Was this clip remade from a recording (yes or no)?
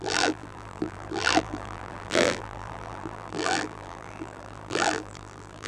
yes